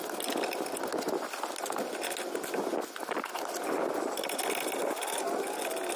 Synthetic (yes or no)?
no